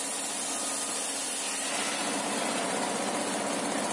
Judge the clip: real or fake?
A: real